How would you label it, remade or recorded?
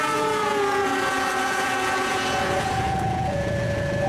remade